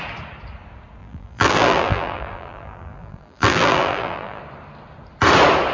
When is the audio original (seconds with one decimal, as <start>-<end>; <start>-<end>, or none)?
0.0-1.0; 4.4-5.7